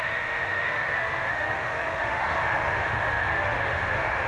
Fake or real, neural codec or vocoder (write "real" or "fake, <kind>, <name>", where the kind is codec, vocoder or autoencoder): fake, autoencoder, DAC-VAE